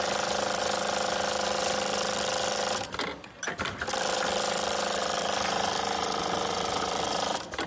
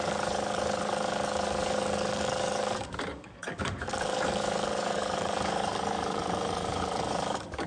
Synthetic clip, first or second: second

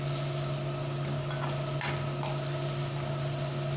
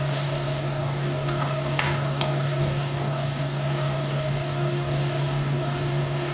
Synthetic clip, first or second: second